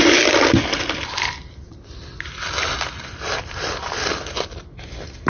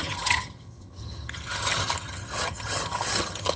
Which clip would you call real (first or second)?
first